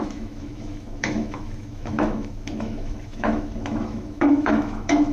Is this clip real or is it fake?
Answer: fake